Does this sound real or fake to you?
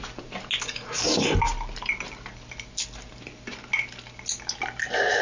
real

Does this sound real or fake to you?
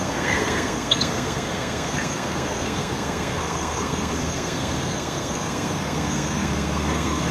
fake